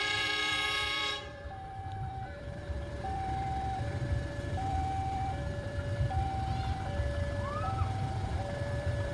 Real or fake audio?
fake